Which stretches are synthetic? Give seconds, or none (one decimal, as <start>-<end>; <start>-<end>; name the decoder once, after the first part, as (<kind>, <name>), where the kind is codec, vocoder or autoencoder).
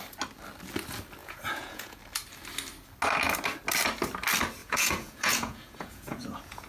1.2-2.0 (vocoder, Vocos); 4.6-6.7